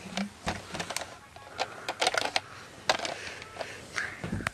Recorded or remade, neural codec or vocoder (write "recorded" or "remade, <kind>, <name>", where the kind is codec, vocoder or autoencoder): recorded